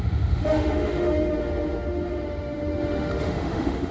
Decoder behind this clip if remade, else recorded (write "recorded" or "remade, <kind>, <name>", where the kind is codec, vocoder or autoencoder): remade, autoencoder, DAC-VAE